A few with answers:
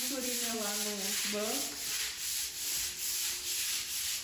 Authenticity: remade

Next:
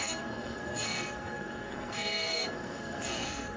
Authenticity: remade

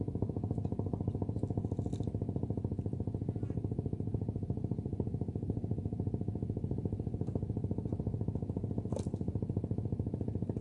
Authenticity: recorded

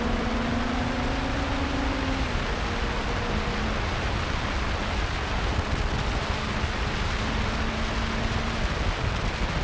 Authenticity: recorded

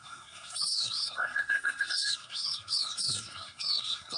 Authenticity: remade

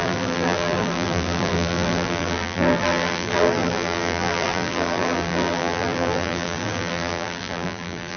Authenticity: remade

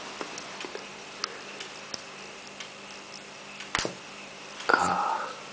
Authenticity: recorded